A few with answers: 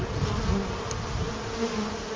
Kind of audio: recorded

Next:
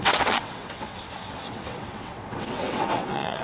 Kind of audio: remade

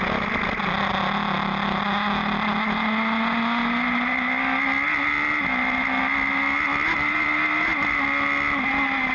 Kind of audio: recorded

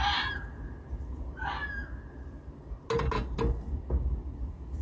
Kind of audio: recorded